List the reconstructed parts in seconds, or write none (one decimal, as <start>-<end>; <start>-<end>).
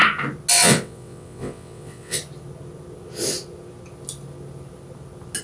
0.5-2.2